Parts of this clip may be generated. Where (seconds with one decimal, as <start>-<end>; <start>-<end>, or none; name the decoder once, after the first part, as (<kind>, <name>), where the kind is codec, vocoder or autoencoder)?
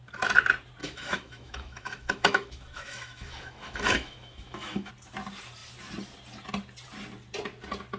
0.8-4.9 (autoencoder, DAC-VAE)